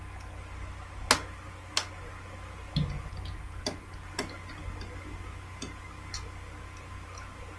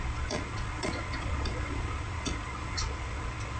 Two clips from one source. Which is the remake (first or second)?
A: second